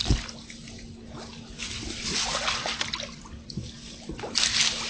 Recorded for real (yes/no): yes